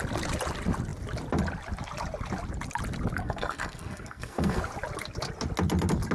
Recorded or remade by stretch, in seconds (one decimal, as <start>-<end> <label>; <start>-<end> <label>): 0.0-3.2 recorded; 3.2-4.6 remade; 4.6-6.1 recorded